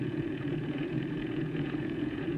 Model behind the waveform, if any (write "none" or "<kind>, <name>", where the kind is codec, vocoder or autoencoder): vocoder, Vocos